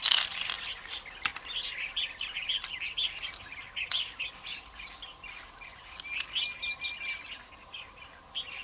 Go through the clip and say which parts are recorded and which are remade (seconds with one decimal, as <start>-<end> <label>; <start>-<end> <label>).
0.0-8.6 recorded